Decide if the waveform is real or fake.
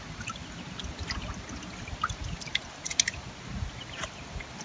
real